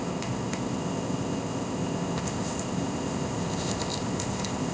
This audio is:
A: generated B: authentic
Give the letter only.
A